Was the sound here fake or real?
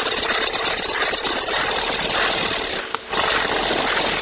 real